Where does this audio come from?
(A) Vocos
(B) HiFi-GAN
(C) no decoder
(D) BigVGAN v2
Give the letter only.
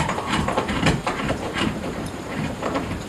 D